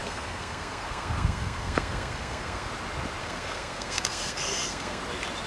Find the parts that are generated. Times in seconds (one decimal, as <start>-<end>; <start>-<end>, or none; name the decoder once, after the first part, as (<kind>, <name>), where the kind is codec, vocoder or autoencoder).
0.0-2.7 (codec, SNAC); 3.2-5.0